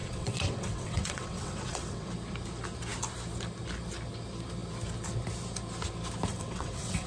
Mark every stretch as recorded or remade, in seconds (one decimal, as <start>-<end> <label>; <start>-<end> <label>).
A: 0.0-2.1 remade; 2.1-6.3 recorded; 6.3-7.1 remade